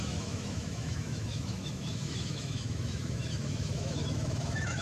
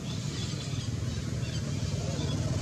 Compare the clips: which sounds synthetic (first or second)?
first